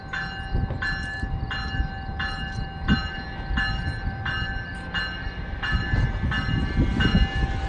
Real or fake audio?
real